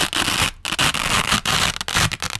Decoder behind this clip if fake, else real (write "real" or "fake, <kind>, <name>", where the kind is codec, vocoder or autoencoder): real